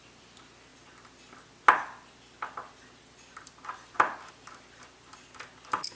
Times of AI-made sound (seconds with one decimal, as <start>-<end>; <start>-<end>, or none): none